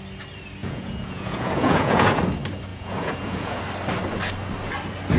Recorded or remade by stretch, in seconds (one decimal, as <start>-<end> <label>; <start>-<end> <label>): 0.0-0.6 recorded; 0.6-2.2 remade; 2.2-2.7 recorded; 2.7-3.6 remade; 3.6-5.2 recorded